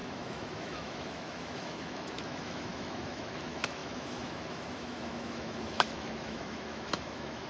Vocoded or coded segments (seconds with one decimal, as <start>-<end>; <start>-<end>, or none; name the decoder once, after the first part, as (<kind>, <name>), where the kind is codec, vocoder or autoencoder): 0.0-7.5 (autoencoder, DAC-VAE)